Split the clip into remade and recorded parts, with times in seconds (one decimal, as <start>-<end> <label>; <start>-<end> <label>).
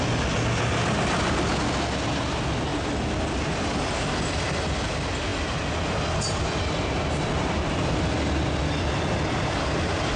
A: 0.0-10.2 recorded